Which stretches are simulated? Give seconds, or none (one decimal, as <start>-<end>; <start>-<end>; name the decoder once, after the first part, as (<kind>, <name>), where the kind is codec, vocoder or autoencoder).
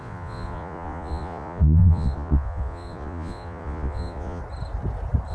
0.0-4.4 (vocoder, Vocos)